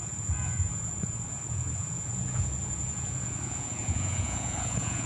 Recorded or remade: remade